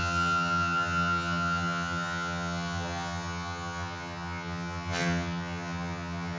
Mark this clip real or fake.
fake